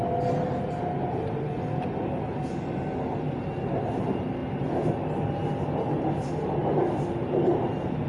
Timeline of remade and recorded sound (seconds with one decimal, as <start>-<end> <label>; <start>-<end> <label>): 0.0-8.1 recorded